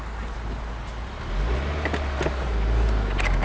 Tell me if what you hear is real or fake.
real